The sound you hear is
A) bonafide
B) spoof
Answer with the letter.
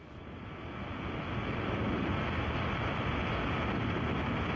A